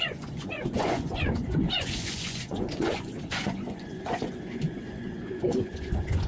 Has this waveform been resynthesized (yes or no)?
yes